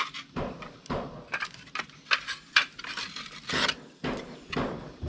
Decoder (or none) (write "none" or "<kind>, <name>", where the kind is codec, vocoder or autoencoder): none